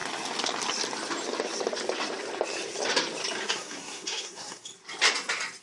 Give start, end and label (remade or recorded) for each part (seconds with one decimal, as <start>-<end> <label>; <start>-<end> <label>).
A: 0.0-3.4 recorded; 3.4-4.7 remade; 4.7-5.6 recorded